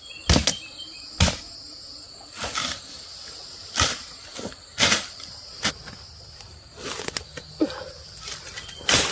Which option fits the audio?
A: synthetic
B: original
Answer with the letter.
B